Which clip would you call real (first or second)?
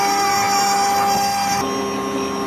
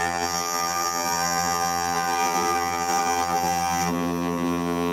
first